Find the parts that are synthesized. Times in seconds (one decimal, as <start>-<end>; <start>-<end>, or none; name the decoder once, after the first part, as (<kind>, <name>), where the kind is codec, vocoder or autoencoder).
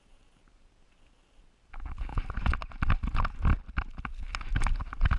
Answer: none